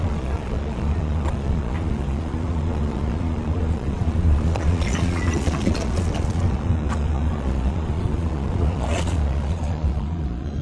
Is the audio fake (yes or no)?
yes